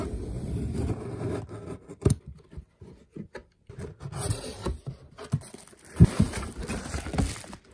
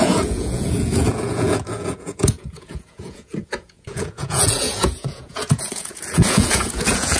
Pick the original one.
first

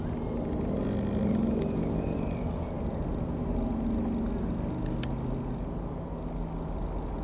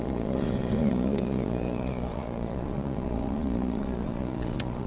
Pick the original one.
first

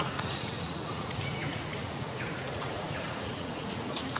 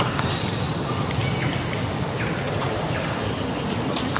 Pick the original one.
second